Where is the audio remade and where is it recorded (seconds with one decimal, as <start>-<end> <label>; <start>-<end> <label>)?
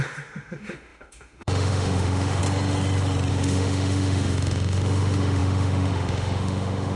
0.0-2.4 remade; 2.4-3.3 recorded; 3.3-7.0 remade